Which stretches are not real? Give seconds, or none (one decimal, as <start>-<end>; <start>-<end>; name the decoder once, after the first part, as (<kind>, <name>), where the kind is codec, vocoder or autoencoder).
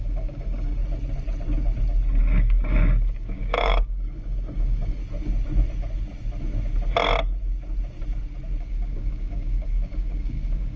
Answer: 0.0-0.8 (codec, DAC); 2.2-5.0; 8.6-10.8